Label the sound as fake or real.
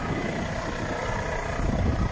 real